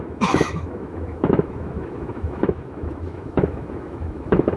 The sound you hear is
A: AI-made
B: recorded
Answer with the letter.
A